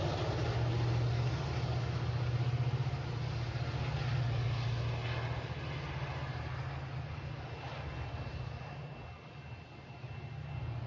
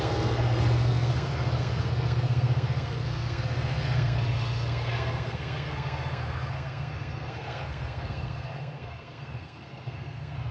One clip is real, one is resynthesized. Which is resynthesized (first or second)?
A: second